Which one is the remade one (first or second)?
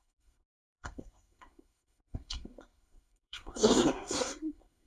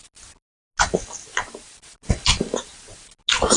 first